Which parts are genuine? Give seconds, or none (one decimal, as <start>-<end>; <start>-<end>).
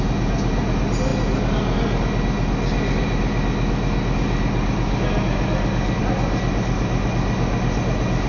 0.0-8.3